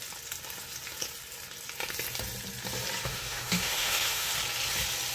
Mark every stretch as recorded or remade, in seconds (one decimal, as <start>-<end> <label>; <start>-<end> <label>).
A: 0.0-3.1 recorded; 3.1-4.3 remade; 4.3-5.1 recorded